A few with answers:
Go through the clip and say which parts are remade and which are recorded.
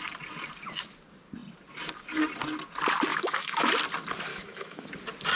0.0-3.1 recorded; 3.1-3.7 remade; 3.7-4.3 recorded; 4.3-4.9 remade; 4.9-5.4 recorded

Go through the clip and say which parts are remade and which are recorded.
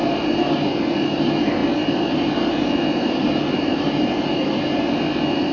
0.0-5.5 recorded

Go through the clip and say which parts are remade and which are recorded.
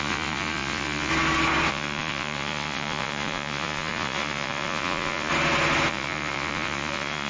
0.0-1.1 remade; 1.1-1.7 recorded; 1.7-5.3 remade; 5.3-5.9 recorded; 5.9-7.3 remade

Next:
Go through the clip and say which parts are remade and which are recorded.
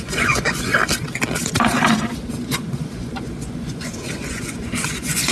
0.0-0.7 remade; 0.7-2.3 recorded; 2.3-5.3 remade